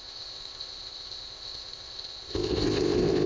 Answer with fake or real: fake